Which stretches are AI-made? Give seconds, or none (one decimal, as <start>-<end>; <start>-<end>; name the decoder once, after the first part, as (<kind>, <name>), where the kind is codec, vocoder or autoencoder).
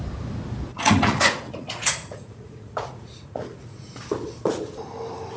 0.7-3.9 (vocoder, Vocos)